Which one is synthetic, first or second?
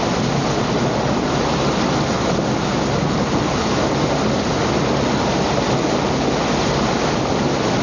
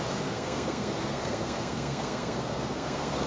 second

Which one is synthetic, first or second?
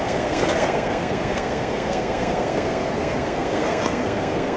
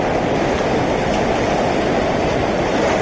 first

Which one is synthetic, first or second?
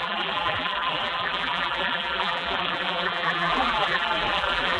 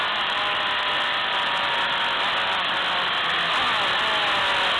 first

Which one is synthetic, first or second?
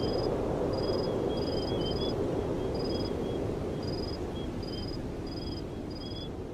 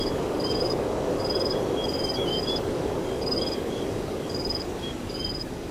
second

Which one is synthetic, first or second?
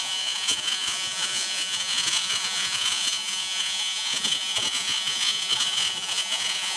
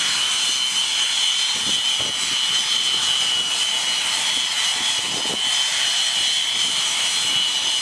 first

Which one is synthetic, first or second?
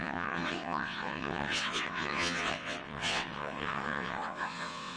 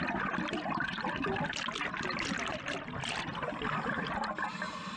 first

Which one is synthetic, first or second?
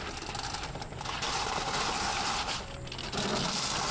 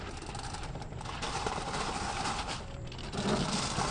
second